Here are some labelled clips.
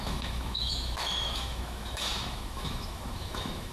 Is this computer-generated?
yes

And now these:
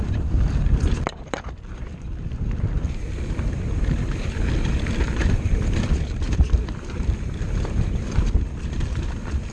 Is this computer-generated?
yes